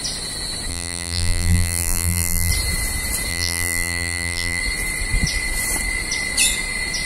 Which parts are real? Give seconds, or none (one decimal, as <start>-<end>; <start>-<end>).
0.0-0.7; 2.5-3.3; 4.6-7.1